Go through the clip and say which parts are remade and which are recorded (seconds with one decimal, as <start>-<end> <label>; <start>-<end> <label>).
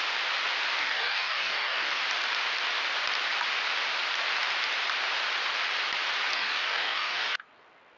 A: 0.0-0.8 recorded; 0.8-2.0 remade; 2.0-6.3 recorded; 6.3-7.5 remade; 7.5-8.0 recorded